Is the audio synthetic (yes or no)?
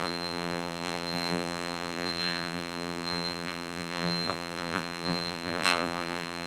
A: yes